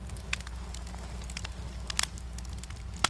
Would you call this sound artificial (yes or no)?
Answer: no